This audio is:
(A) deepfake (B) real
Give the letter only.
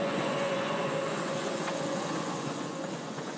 A